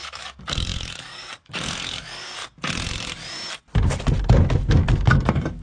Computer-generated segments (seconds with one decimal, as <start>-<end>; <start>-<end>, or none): 0.0-2.4; 4.7-5.6